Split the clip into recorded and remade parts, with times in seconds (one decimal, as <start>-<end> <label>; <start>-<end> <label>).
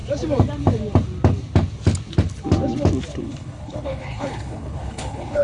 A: 0.0-3.2 recorded; 3.2-5.4 remade